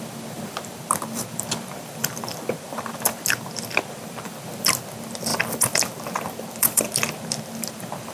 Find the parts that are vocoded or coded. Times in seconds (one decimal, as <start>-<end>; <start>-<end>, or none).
0.0-8.1